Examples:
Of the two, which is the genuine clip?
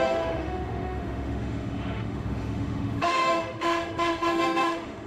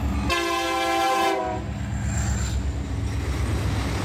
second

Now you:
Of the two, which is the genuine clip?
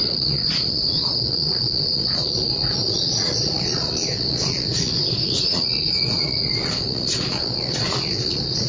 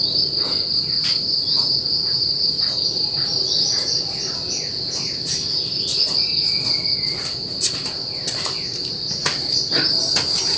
second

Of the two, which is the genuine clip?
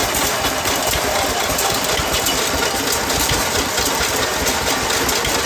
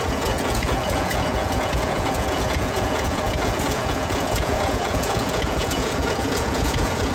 first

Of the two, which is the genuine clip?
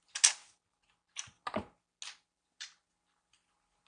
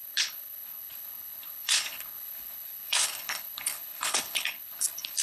first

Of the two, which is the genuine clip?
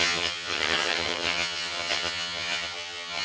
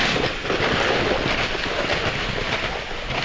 second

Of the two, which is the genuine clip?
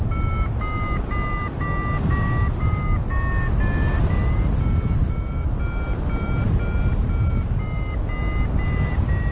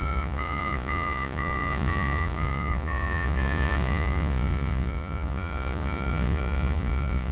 first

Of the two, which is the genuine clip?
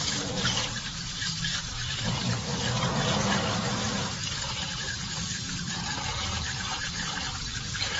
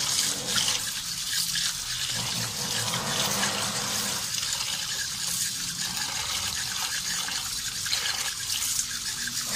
second